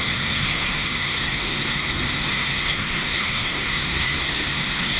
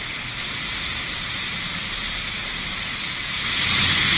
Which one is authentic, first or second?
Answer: second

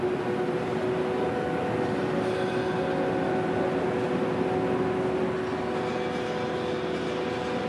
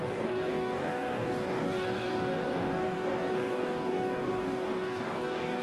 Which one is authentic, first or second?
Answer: first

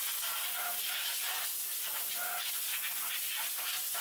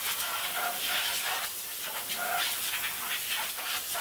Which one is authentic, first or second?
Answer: first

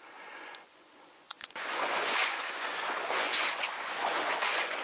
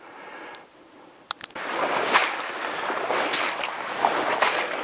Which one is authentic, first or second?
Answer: second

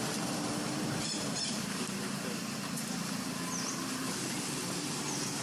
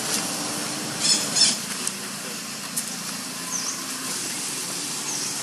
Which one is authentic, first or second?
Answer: second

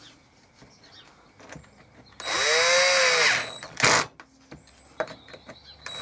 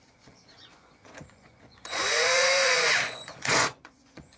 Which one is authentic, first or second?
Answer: first